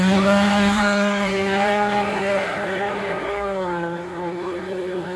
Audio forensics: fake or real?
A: fake